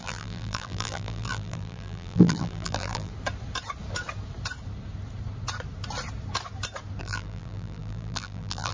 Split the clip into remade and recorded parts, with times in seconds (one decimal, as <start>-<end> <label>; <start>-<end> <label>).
0.0-3.1 remade; 3.1-7.0 recorded; 7.0-8.7 remade